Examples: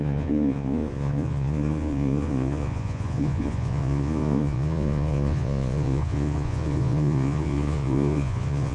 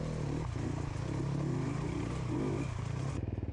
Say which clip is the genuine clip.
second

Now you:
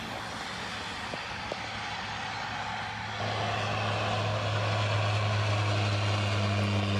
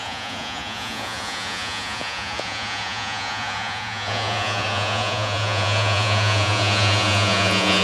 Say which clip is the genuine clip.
first